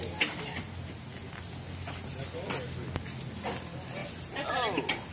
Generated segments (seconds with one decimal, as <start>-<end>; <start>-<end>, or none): none

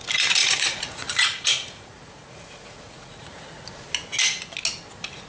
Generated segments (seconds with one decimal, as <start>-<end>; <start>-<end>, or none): 0.4-3.6

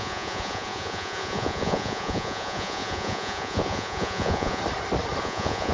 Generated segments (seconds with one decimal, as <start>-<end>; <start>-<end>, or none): 0.0-4.6; 5.2-5.7

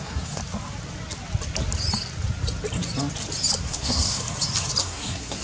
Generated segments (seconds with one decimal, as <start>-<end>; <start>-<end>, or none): 0.0-0.4; 3.6-4.2; 4.8-5.4

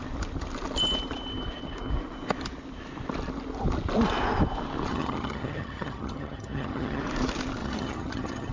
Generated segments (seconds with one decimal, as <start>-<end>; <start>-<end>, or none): 4.9-7.0; 7.6-8.5